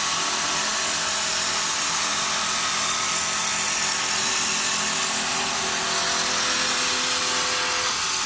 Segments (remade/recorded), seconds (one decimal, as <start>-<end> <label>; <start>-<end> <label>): 0.0-8.3 recorded